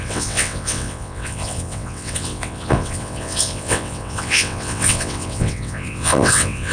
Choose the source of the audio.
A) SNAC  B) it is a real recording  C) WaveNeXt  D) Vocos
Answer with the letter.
C